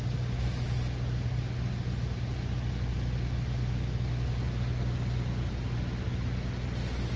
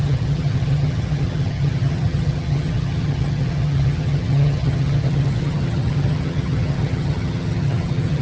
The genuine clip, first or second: first